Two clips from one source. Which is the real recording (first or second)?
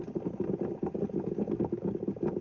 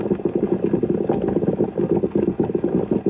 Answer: second